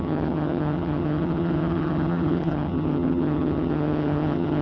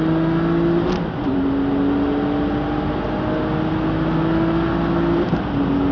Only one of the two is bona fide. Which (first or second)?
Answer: second